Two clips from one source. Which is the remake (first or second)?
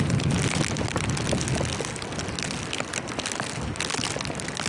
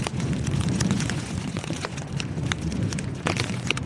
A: second